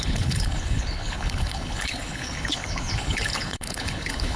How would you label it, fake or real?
fake